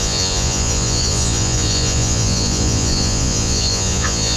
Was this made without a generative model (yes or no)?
no